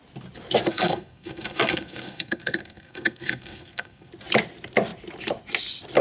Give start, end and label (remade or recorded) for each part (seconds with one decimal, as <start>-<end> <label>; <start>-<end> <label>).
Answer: 0.0-0.7 recorded; 0.7-4.1 remade; 4.1-6.0 recorded